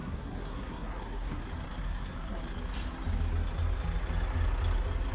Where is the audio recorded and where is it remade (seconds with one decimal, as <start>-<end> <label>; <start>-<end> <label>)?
0.0-1.4 remade; 1.4-1.8 recorded; 1.8-2.4 remade; 2.4-5.1 recorded